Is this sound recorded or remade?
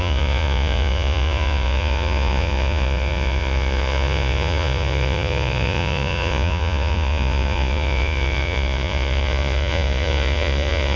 remade